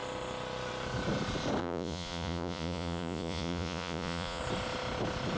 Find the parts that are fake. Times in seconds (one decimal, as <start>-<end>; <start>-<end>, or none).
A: 1.6-4.4